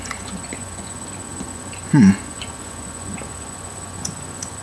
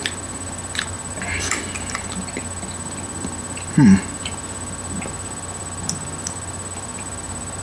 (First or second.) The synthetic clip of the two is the first